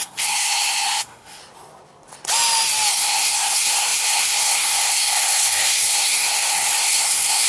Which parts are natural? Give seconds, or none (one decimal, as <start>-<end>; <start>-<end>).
1.4-2.9